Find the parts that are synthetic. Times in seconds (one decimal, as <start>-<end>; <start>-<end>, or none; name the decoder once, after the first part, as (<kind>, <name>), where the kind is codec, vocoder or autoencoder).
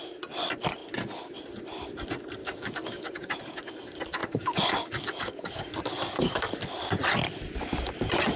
2.4-3.3 (codec, DAC); 4.2-6.6